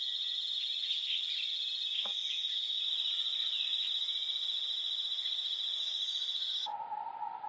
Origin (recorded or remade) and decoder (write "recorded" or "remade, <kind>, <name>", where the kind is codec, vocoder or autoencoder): recorded